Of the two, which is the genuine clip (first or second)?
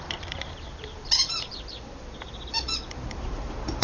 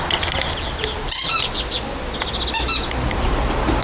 second